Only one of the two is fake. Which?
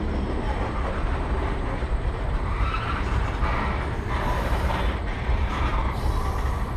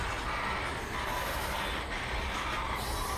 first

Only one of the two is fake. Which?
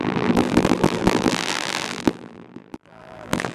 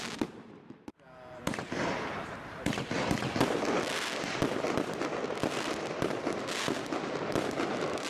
first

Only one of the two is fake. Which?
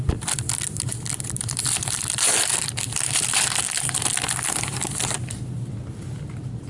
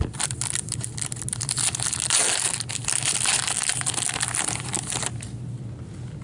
first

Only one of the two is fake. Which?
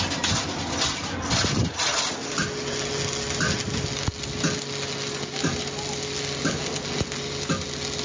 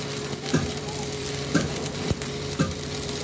second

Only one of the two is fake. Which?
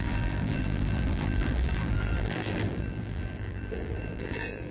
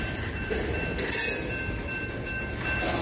first